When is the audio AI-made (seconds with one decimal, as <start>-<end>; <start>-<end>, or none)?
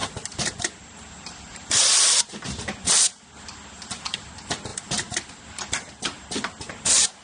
0.0-4.3; 4.7-6.7